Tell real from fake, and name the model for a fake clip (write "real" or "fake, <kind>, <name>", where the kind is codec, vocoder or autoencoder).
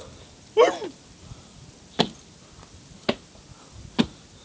real